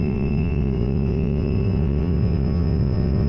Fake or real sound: fake